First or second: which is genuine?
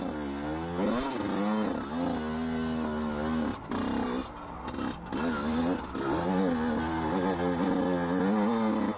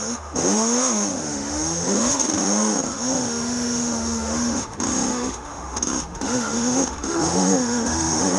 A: first